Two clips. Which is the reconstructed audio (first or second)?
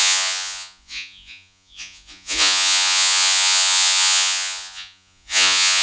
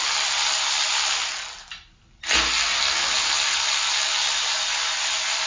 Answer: first